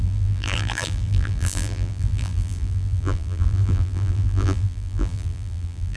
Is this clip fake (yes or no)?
yes